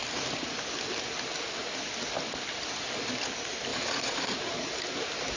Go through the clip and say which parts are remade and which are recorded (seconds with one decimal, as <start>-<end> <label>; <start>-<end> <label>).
0.0-3.7 recorded; 3.7-4.5 remade; 4.5-5.4 recorded